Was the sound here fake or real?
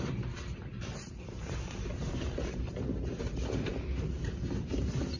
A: fake